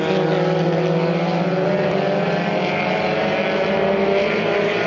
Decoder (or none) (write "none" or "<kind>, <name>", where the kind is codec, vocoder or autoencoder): none